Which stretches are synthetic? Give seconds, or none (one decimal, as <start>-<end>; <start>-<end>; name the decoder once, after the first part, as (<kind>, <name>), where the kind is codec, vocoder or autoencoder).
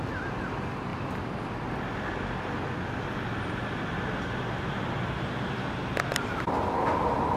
none